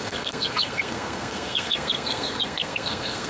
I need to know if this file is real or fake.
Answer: fake